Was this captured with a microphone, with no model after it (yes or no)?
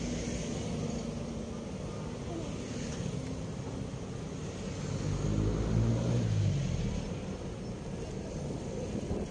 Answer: yes